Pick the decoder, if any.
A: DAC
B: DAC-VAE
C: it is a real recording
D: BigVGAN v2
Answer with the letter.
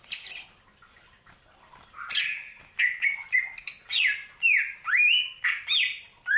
C